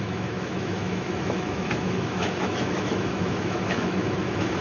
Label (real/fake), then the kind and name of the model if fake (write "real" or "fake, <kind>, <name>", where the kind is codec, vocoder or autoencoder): fake, autoencoder, DAC-VAE